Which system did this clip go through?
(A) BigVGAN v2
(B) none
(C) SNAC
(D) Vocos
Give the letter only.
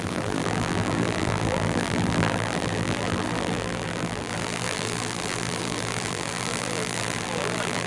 A